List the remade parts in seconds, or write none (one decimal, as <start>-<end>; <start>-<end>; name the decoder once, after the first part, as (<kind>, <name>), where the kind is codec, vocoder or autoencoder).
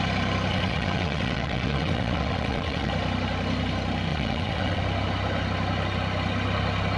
0.5-2.9 (vocoder, WaveNeXt); 4.1-4.8